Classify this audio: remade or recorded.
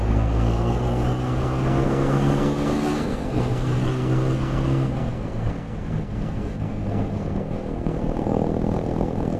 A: remade